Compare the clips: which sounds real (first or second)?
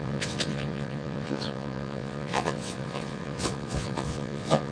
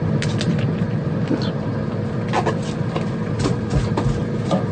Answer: second